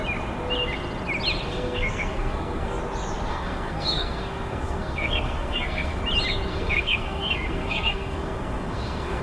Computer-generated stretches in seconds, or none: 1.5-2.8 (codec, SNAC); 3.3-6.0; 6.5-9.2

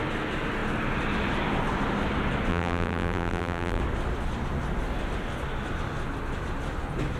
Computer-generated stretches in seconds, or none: 2.5-3.8 (vocoder, BigVGAN v2)